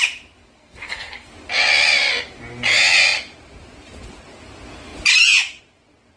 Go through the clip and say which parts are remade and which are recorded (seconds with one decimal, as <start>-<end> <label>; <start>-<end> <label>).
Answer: 0.0-0.6 recorded; 0.6-1.3 remade; 1.3-6.2 recorded